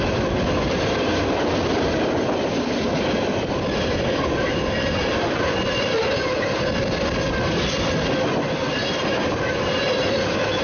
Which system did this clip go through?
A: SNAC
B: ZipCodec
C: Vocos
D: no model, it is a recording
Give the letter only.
D